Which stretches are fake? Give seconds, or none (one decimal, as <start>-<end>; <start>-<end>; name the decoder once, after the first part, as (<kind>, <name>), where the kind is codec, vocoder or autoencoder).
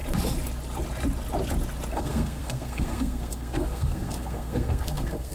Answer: 1.9-5.3 (codec, SNAC)